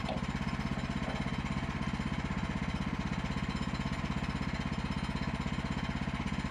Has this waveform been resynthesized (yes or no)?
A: no